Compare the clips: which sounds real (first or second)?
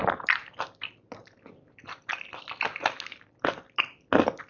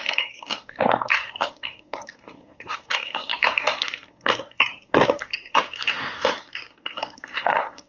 first